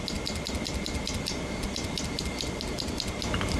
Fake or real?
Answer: real